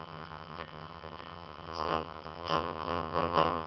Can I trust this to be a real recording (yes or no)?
no